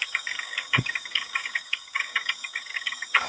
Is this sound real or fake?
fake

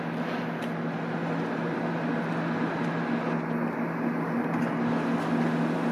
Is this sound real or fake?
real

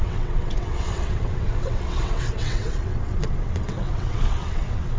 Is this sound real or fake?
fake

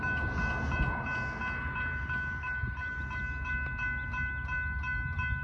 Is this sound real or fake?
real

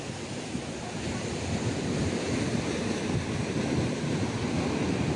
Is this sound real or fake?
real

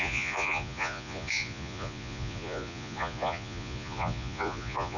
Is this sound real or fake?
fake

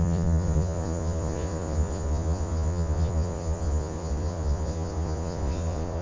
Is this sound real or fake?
fake